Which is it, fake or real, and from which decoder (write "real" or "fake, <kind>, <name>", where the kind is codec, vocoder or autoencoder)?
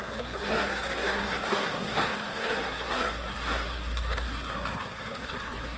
fake, codec, SNAC